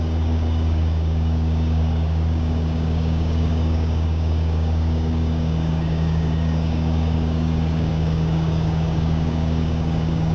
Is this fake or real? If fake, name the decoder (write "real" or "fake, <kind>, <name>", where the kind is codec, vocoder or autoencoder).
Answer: fake, codec, DAC